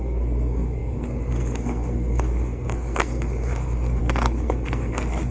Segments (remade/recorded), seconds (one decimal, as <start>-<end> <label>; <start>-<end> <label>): 0.0-5.3 remade